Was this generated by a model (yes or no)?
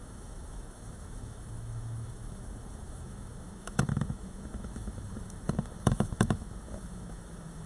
yes